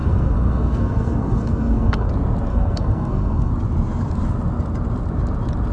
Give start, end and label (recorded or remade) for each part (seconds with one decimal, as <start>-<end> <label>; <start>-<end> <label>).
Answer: 0.0-2.1 remade; 2.1-2.5 recorded; 2.5-3.5 remade; 3.5-5.7 recorded